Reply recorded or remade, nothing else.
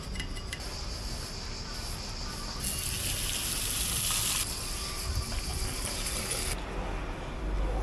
recorded